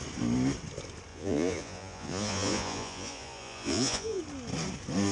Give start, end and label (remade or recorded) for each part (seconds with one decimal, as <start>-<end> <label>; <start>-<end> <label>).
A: 0.0-1.1 recorded; 1.1-4.2 remade; 4.2-5.1 recorded